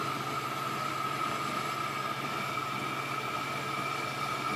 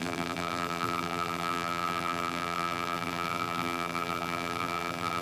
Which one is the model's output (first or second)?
second